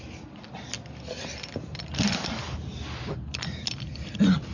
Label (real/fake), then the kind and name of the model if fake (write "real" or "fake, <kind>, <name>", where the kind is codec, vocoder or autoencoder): real